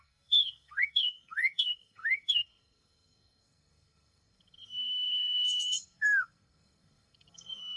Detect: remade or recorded remade